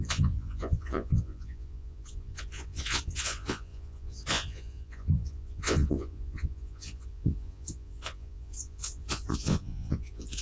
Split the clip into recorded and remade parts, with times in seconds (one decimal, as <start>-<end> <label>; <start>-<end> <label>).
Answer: 0.0-10.4 remade